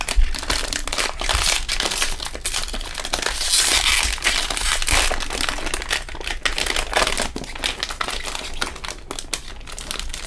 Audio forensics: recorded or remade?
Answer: recorded